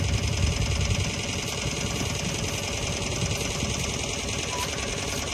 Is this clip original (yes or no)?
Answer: yes